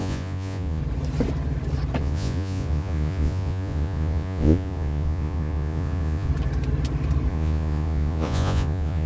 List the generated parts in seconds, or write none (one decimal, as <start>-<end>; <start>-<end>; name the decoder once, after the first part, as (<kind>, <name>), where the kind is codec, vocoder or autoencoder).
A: 0.0-0.8 (vocoder, Vocos); 2.0-6.3; 7.3-9.1